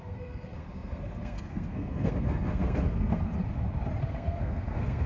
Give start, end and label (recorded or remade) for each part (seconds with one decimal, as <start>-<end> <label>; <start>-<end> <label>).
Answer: 0.0-3.3 remade; 3.3-4.0 recorded; 4.0-5.1 remade